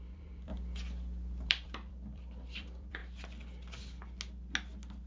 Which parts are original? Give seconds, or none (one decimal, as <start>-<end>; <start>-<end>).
0.5-1.5; 3.0-5.1